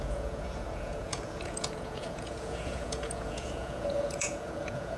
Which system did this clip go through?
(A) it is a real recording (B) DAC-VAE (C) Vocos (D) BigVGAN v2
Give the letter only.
C